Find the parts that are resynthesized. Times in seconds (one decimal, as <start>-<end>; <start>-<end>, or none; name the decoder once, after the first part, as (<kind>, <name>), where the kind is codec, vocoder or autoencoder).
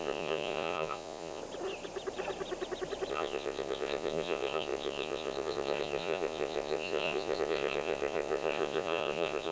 0.0-1.4 (vocoder, Vocos); 3.1-9.5